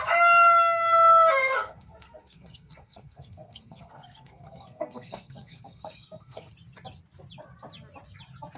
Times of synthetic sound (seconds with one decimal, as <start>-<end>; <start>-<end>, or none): 1.4-6.5